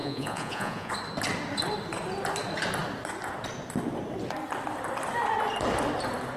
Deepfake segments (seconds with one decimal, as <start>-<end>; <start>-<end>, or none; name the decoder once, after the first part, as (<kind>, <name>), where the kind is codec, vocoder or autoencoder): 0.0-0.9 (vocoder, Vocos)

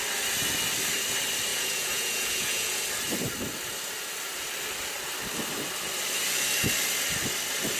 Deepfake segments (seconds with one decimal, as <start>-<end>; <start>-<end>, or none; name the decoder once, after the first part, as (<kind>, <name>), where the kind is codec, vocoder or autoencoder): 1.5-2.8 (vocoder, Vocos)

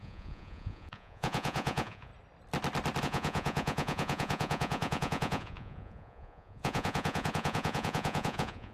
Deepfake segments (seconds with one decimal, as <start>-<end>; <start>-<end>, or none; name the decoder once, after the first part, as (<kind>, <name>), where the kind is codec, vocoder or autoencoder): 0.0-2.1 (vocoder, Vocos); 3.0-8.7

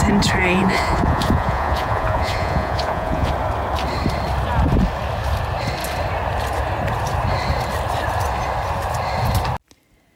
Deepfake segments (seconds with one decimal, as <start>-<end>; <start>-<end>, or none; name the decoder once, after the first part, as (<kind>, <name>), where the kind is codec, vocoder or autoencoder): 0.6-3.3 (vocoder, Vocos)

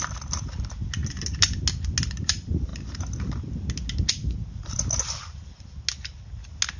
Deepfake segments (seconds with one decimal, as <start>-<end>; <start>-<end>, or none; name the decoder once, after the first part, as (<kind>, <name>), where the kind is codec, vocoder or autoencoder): none

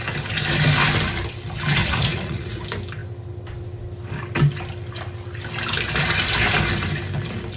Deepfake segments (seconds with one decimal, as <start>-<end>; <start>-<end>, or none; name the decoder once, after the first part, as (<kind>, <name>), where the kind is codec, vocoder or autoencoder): 1.8-2.6 (vocoder, Vocos)